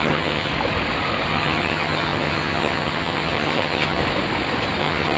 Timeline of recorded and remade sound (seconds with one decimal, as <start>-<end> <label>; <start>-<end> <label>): 0.0-0.5 remade; 0.5-1.3 recorded; 1.3-4.0 remade; 4.0-4.8 recorded; 4.8-5.2 remade